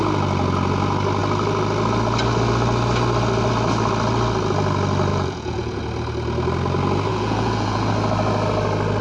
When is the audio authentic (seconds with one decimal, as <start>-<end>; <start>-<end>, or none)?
0.0-5.1; 5.8-7.1; 7.9-9.0